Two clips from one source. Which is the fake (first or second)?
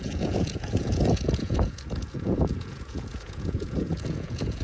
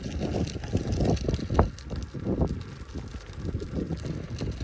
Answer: first